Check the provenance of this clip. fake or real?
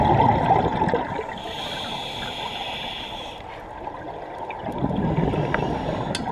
real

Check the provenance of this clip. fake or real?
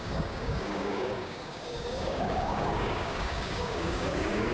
fake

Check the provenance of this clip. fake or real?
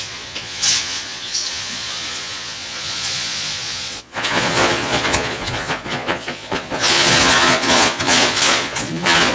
fake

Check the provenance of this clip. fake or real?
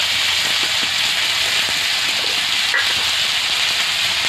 real